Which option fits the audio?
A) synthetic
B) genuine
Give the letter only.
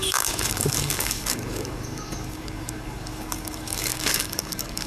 A